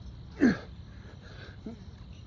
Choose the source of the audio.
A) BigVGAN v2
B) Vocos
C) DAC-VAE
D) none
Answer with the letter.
D